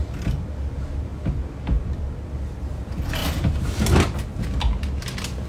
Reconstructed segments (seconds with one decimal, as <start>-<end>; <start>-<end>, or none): 3.2-4.4